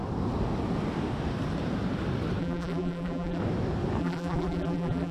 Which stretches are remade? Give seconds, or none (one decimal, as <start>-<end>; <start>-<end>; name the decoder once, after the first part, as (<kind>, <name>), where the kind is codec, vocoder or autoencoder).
2.4-3.4 (vocoder, BigVGAN v2); 4.0-5.1